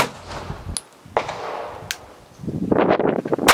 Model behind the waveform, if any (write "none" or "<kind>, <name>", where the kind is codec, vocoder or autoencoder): none